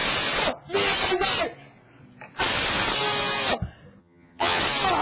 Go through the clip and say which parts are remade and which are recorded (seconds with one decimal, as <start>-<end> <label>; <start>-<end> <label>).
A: 0.0-4.0 recorded; 4.0-4.6 remade; 4.6-5.0 recorded